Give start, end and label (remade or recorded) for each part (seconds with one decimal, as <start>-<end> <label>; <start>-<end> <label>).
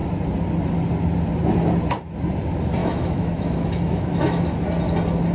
0.0-2.8 recorded; 2.8-4.6 remade; 4.6-5.3 recorded